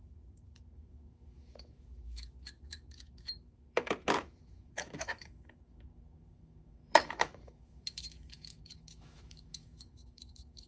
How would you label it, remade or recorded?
remade